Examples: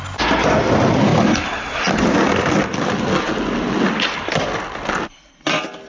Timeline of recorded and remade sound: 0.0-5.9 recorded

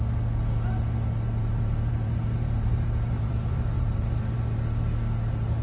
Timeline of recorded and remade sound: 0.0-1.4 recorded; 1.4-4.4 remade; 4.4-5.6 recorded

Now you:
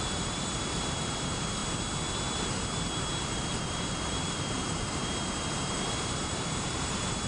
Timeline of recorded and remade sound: 0.0-1.6 remade; 1.6-3.2 recorded; 3.2-7.3 remade

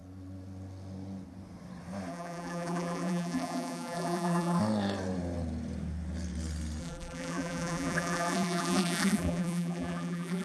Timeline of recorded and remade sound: 0.0-2.1 recorded; 2.1-4.6 remade; 4.6-6.8 recorded; 6.8-10.4 remade